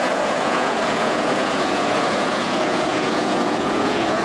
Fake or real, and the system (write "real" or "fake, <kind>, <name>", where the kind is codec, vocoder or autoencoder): fake, vocoder, Vocos